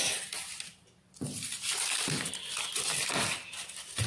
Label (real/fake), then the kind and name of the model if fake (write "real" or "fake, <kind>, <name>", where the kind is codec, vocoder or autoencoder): real